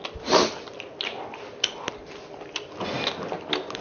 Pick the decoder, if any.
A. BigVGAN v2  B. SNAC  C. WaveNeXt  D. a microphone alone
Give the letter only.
D